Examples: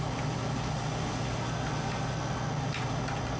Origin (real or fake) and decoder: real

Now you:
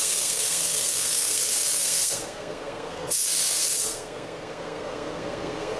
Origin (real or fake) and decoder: fake, codec, SNAC